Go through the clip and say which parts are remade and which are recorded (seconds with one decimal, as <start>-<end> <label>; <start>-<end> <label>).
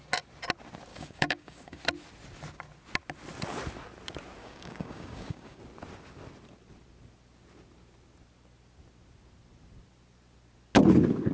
0.0-0.9 recorded; 0.9-1.8 remade; 1.8-4.4 recorded; 4.4-5.6 remade; 5.6-11.3 recorded